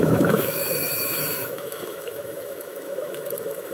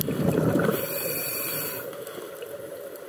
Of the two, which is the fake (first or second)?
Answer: first